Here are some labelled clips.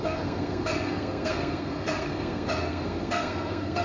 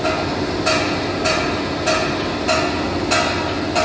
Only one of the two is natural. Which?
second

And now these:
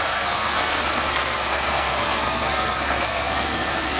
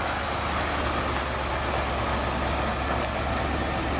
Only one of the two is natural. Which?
second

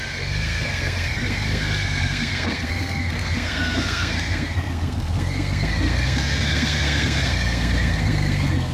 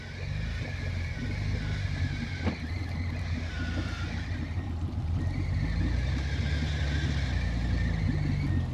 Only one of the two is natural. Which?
second